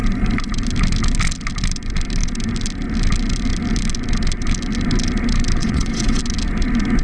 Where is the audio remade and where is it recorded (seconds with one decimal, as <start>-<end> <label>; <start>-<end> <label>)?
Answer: 0.0-5.6 recorded; 5.6-6.2 remade; 6.2-7.0 recorded